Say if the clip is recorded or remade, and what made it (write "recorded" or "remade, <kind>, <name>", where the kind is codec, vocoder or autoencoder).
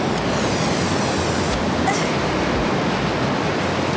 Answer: recorded